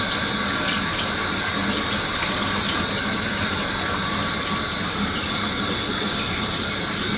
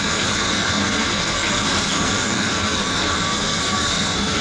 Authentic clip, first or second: first